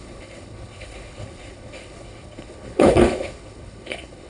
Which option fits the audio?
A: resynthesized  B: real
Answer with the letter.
A